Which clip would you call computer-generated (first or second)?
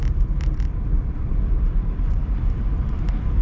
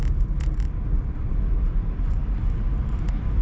first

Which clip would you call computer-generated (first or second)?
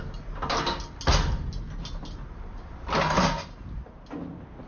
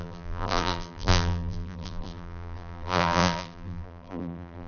second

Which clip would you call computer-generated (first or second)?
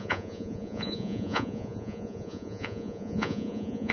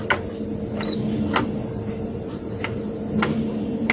first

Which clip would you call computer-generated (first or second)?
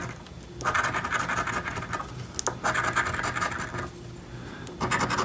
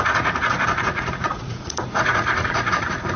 second